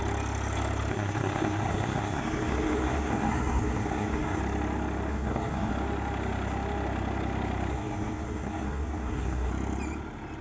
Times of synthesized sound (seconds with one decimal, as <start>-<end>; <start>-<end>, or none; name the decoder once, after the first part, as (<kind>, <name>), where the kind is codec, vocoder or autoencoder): 0.9-4.4 (codec, SNAC); 5.1-5.7; 7.7-9.5